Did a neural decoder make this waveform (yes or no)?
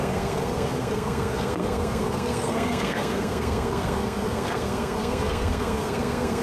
yes